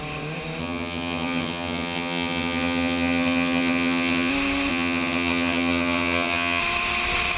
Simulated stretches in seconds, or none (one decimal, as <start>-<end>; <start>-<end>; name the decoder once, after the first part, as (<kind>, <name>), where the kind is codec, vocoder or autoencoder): 0.6-4.3 (vocoder, HiFi-GAN); 4.7-6.6